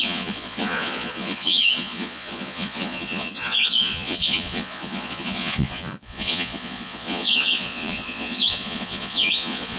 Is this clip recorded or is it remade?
remade